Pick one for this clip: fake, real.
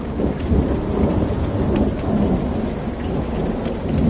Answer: real